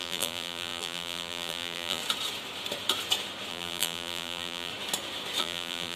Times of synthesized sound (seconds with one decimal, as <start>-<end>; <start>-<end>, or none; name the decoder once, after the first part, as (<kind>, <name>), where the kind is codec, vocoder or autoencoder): 0.0-2.0 (vocoder, BigVGAN v2); 3.5-4.7; 5.4-6.0